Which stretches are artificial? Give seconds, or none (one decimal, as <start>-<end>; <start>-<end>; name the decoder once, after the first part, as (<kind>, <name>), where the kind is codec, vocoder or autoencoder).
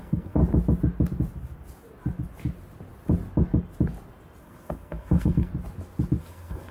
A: 0.0-0.4 (codec, SNAC); 4.4-5.5; 6.2-6.7